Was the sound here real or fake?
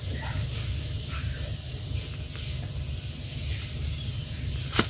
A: fake